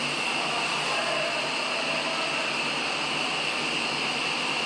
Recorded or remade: recorded